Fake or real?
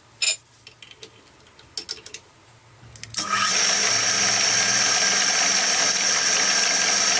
real